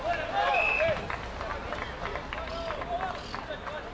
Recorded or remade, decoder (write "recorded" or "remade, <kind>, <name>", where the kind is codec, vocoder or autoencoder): recorded